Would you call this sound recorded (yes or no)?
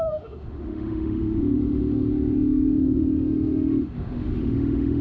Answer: no